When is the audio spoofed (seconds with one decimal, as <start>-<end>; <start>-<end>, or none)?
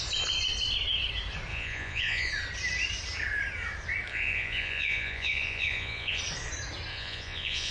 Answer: 1.5-2.3; 4.1-6.2; 6.9-7.7